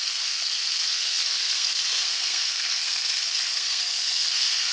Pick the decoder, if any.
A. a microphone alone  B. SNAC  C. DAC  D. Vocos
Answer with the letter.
B